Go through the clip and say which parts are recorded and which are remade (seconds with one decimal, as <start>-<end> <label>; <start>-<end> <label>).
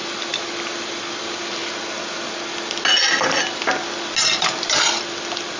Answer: 0.0-5.6 recorded